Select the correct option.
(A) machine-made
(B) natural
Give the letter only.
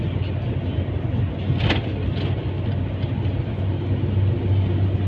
B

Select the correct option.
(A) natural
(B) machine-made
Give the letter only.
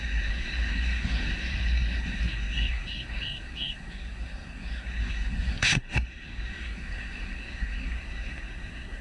B